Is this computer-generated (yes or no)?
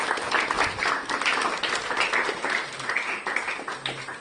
no